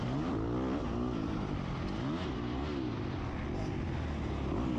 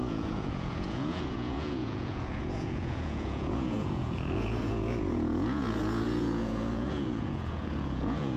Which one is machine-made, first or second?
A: second